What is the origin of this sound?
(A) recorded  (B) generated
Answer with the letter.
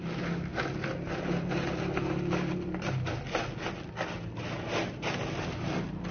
B